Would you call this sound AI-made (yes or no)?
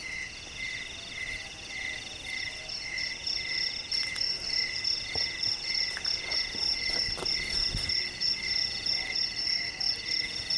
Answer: no